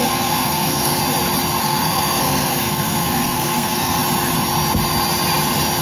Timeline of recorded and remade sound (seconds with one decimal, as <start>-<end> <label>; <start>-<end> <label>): 0.0-1.0 remade; 1.0-1.6 recorded; 1.6-4.0 remade; 4.0-5.8 recorded